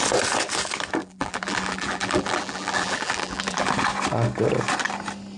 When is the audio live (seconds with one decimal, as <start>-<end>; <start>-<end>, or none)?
0.0-1.0; 3.7-5.4